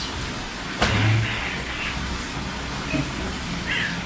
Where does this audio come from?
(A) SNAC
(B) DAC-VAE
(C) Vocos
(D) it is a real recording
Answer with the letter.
D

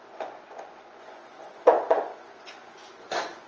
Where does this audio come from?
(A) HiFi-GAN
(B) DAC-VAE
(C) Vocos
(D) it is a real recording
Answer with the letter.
C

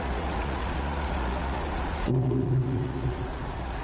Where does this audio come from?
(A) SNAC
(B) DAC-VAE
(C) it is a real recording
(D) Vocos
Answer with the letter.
D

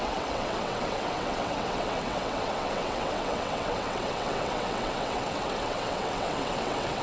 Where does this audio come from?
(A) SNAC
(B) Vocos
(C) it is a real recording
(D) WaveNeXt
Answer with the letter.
D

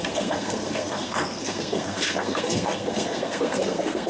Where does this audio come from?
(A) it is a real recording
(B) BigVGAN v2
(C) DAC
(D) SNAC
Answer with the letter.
D